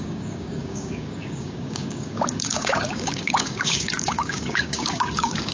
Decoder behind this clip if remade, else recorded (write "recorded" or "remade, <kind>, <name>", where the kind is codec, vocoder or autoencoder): remade, codec, DAC